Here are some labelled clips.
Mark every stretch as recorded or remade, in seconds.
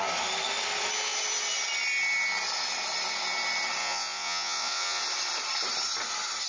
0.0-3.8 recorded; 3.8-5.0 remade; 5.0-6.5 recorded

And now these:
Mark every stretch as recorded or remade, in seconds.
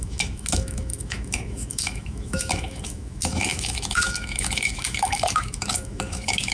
0.0-6.5 remade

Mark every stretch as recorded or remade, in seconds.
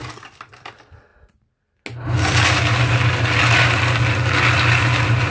0.0-5.3 recorded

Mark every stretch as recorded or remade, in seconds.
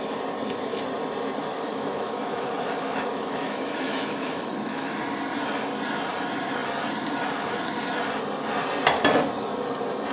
0.0-1.5 recorded; 1.5-5.0 remade; 5.0-10.1 recorded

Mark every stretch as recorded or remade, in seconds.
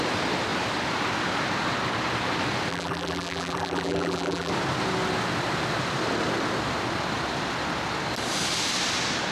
0.0-2.7 recorded; 2.7-4.5 remade; 4.5-9.3 recorded